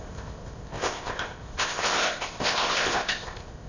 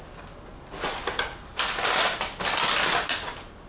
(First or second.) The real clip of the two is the second